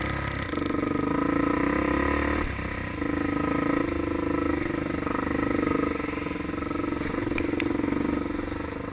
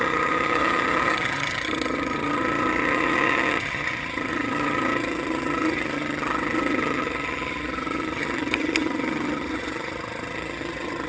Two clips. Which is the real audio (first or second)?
first